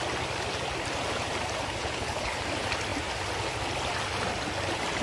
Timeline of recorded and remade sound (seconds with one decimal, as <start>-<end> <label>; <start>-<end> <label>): 0.0-1.8 recorded; 1.8-2.4 remade; 2.4-5.0 recorded